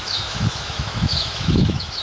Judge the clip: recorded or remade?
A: remade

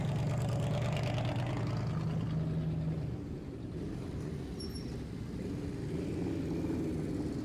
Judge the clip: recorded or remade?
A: recorded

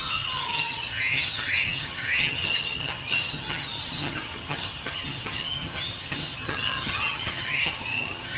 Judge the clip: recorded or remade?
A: remade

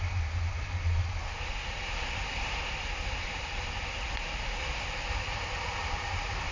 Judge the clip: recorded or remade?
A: recorded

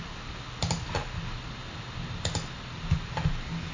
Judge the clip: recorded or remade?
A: recorded